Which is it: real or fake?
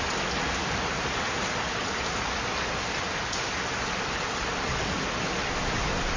real